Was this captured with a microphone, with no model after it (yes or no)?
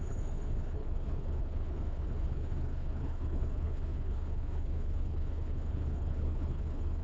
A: no